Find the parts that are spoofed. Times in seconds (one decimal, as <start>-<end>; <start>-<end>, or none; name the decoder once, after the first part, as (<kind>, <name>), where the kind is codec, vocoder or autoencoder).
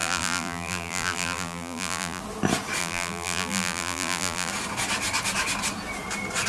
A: 0.0-2.2 (vocoder, BigVGAN v2); 2.8-4.5